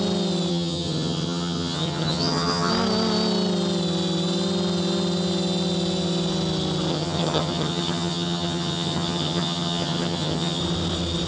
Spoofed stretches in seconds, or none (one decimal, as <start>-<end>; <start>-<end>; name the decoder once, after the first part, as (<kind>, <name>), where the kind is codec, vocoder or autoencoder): 0.5-2.7 (vocoder, HiFi-GAN); 6.9-10.6

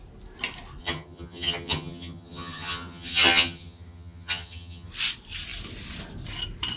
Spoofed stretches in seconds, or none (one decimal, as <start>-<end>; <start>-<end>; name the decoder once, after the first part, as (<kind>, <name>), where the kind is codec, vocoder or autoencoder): 0.8-4.9 (vocoder, HiFi-GAN)

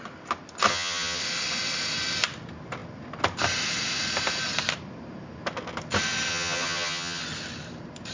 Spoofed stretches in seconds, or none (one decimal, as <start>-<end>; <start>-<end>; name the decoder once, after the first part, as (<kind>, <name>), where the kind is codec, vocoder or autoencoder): 0.7-1.2 (vocoder, HiFi-GAN); 6.3-7.2

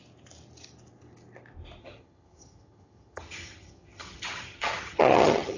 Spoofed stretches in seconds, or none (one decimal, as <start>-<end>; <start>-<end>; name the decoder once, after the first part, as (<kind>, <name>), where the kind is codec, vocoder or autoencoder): 1.8-5.6 (vocoder, HiFi-GAN)